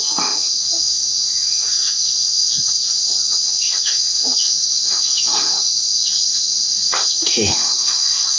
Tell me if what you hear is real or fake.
fake